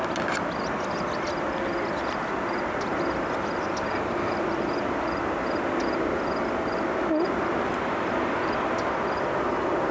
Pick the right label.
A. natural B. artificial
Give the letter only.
A